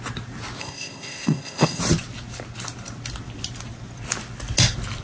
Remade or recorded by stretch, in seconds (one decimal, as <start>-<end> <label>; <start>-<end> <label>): 0.0-0.6 recorded; 0.6-1.8 remade; 1.8-5.0 recorded